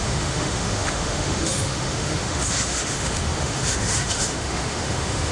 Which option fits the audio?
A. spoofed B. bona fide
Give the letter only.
A